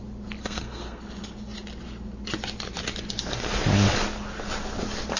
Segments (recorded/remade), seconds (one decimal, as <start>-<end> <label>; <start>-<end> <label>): 0.0-0.4 recorded; 0.4-1.0 remade; 1.0-5.2 recorded